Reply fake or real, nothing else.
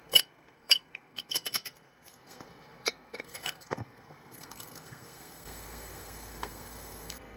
fake